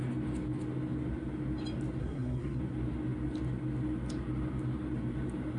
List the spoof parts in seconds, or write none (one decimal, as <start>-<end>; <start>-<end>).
2.0-2.6